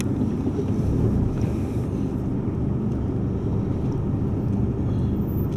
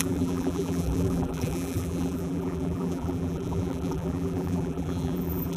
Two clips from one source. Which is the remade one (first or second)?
second